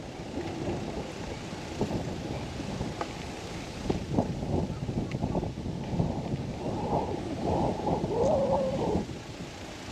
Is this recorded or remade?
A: recorded